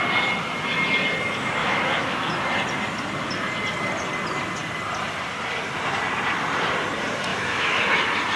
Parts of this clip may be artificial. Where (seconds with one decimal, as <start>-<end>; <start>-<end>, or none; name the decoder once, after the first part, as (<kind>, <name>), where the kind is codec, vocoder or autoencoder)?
1.6-2.3 (autoencoder, DAC-VAE); 7.3-7.8